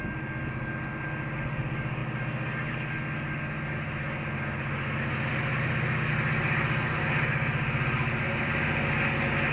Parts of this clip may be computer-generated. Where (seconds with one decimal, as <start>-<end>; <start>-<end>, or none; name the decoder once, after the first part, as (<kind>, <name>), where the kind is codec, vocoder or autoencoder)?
none